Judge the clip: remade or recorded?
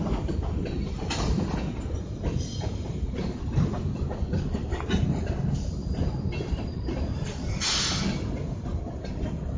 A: recorded